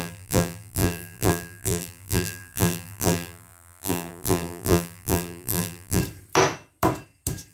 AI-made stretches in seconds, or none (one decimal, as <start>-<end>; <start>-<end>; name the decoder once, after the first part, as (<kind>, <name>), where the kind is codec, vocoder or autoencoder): 0.0-6.0 (vocoder, BigVGAN v2)